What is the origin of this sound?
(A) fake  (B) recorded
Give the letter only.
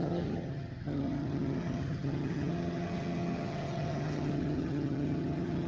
A